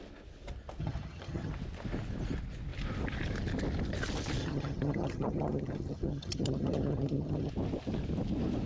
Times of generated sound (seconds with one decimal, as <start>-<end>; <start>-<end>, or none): 0.8-1.5; 4.4-7.5